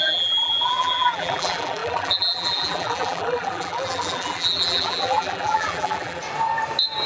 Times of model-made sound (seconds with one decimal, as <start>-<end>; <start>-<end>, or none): 0.0-6.2